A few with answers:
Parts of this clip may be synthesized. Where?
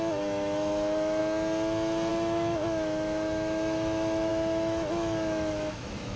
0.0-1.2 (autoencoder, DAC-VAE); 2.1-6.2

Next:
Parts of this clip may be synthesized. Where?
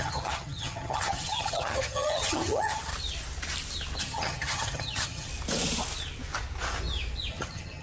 0.0-2.9 (vocoder, HiFi-GAN); 4.0-5.3; 7.3-7.8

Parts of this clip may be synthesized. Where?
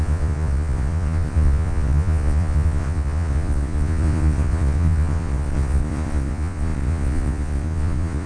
0.0-8.3 (vocoder, Vocos)